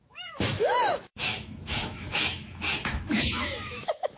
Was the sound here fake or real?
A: fake